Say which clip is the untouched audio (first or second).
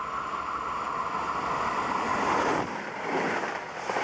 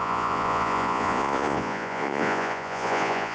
first